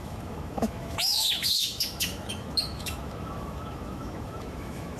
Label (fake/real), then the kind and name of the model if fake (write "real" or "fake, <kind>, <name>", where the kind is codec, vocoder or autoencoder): fake, autoencoder, DAC-VAE